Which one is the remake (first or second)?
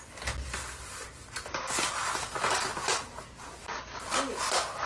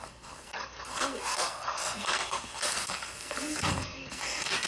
second